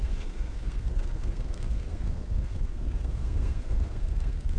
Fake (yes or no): yes